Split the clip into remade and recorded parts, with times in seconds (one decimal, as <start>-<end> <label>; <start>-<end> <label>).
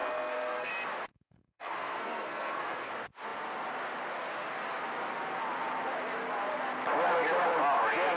0.0-0.7 remade; 0.7-1.1 recorded; 1.1-2.9 remade; 2.9-8.2 recorded